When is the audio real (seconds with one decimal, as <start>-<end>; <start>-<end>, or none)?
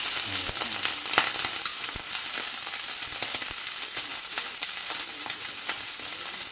0.0-1.7; 3.1-4.1; 5.9-6.5